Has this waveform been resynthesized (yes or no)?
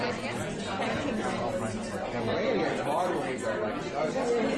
no